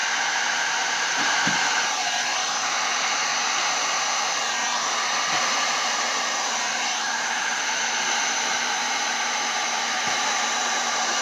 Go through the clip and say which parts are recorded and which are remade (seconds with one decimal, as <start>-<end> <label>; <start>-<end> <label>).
0.0-3.3 remade; 3.3-5.4 recorded; 5.4-11.2 remade